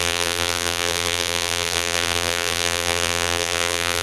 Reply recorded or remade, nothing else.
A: remade